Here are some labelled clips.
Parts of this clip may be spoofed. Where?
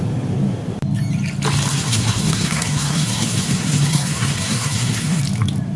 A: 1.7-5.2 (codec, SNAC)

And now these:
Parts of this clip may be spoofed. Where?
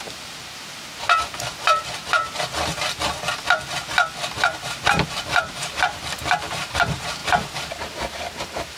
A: 0.0-2.2 (vocoder, BigVGAN v2); 4.1-8.8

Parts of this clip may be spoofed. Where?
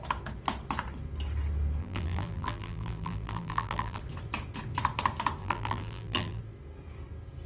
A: 1.8-4.0 (vocoder, BigVGAN v2); 5.4-6.4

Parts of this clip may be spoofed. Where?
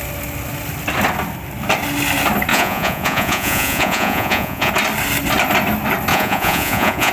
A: 2.5-4.7 (vocoder, Vocos); 6.1-7.1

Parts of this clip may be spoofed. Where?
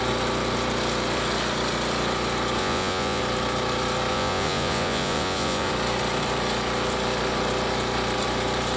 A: 2.6-3.2 (vocoder, Vocos); 4.1-5.7